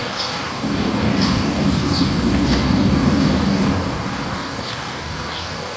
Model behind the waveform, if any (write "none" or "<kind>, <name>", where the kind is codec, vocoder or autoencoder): codec, DAC